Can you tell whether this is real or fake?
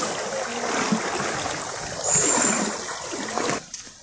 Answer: real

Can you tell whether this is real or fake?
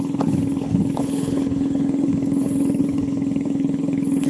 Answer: fake